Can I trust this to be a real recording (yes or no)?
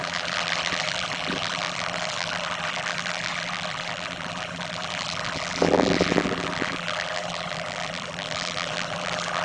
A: no